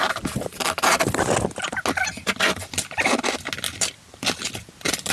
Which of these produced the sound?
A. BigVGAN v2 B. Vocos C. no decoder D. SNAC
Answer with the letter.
C